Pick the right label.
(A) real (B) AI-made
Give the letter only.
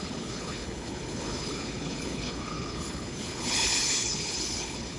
B